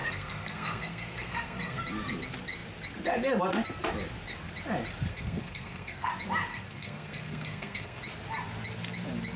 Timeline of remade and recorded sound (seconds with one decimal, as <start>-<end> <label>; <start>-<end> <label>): 0.0-1.8 remade; 1.8-5.1 recorded; 5.1-6.1 remade; 6.1-6.5 recorded; 6.5-8.0 remade; 8.0-9.4 recorded